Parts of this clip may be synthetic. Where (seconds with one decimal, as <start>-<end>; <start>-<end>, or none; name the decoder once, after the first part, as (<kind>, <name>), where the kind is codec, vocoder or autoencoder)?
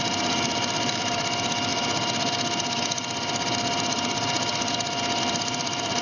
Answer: 0.0-1.7 (vocoder, BigVGAN v2); 5.2-6.0